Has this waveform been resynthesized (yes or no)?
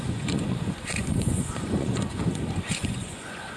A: yes